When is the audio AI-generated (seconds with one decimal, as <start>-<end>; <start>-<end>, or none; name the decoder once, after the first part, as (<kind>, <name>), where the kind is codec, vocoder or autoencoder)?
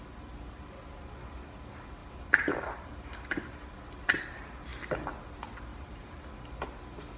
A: 2.0-3.4 (vocoder, BigVGAN v2); 5.7-6.3